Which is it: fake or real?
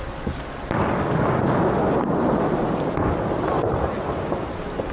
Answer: real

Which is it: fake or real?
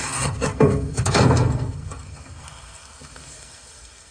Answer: fake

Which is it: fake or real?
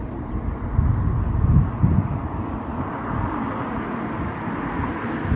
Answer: real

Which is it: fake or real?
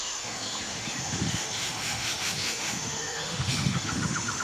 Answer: fake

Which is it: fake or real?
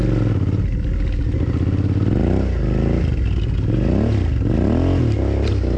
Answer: real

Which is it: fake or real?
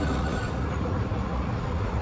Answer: fake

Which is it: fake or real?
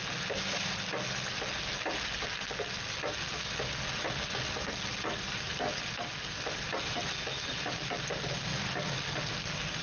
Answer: real